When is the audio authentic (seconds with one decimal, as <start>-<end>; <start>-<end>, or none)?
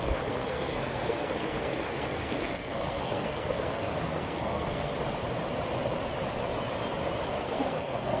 4.9-7.3